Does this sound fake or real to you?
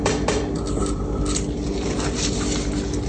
real